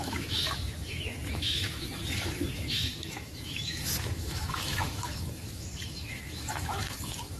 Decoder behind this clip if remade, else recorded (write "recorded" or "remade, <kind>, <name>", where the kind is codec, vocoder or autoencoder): remade, autoencoder, DAC-VAE